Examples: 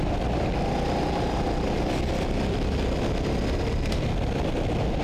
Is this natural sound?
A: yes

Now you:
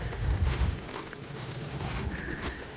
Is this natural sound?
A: no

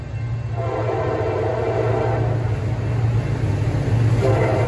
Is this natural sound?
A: yes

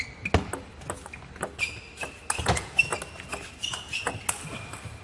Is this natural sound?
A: yes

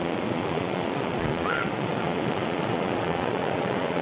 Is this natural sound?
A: no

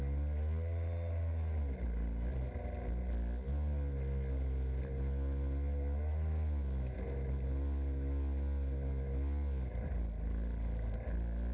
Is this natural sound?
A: yes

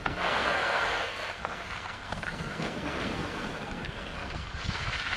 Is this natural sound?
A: no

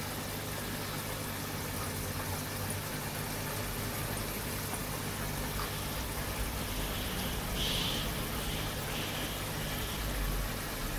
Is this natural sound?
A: yes